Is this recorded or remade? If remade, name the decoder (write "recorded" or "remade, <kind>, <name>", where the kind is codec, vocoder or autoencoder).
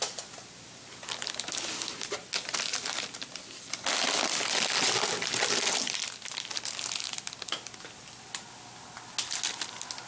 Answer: recorded